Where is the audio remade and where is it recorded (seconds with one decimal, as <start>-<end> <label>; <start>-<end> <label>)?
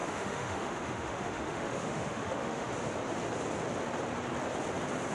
0.0-2.7 remade; 2.7-5.1 recorded